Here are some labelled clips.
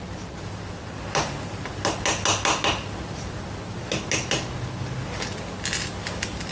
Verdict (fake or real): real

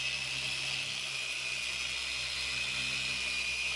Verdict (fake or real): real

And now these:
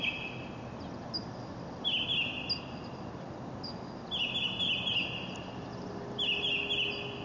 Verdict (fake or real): real